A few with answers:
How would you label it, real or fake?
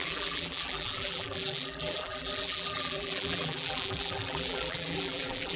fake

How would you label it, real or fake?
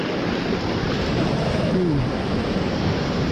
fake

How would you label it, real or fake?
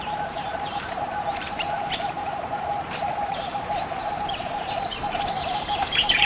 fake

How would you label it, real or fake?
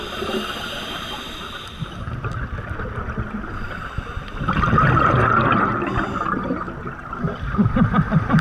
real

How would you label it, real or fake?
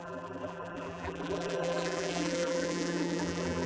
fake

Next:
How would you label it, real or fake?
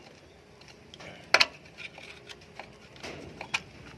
real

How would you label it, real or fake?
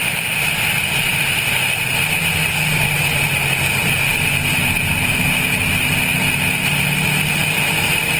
real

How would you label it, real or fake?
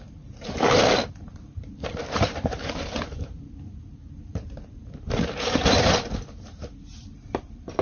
fake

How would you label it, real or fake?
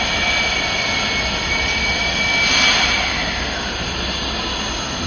real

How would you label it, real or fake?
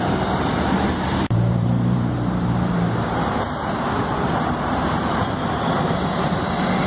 fake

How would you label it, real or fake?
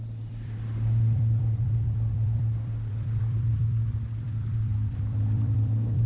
fake